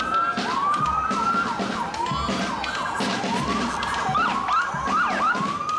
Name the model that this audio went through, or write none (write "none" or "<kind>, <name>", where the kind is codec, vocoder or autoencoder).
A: none